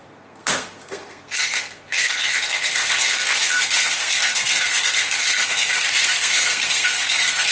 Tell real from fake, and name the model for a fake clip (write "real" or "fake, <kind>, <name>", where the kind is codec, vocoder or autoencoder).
fake, codec, SNAC